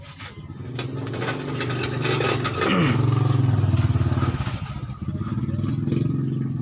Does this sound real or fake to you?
real